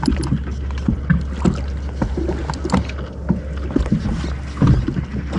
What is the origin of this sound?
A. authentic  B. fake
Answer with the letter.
A